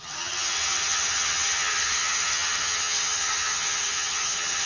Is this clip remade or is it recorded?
remade